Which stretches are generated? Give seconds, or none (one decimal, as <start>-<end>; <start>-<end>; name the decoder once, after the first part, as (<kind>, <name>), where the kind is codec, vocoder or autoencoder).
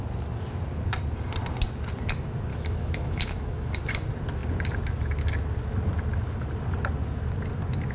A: 2.5-3.8 (autoencoder, DAC-VAE)